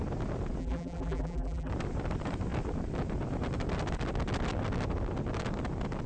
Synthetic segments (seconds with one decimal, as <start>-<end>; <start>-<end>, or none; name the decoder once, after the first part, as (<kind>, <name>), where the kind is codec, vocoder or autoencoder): 0.6-1.7 (vocoder, BigVGAN v2)